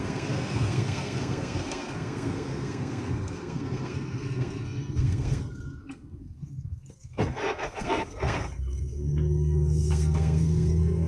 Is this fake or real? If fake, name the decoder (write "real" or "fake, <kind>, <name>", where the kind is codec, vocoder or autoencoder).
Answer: fake, codec, SNAC